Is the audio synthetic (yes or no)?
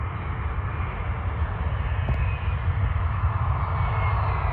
no